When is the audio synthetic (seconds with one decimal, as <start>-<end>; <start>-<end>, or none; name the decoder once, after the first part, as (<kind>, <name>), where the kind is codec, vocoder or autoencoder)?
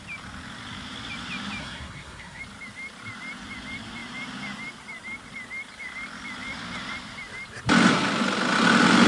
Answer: 1.6-2.4 (codec, SNAC)